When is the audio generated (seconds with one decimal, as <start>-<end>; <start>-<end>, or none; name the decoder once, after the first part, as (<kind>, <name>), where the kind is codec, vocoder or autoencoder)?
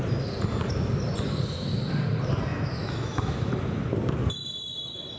2.5-3.5 (autoencoder, DAC-VAE)